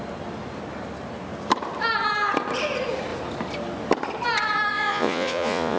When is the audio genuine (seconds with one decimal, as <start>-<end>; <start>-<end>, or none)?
0.0-4.7